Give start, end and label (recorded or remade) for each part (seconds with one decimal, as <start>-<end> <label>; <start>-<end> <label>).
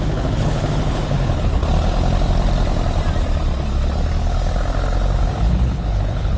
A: 0.0-1.6 remade; 1.6-5.4 recorded; 5.4-6.4 remade